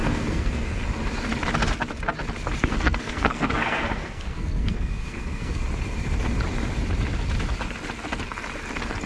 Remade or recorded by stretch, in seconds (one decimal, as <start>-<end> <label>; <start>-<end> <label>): 0.0-0.8 remade; 0.8-2.6 recorded; 2.6-5.6 remade; 5.6-9.1 recorded